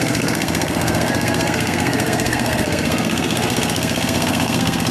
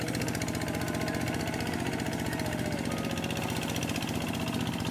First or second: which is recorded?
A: second